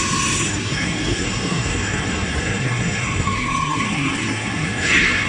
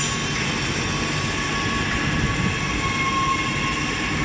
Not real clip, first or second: first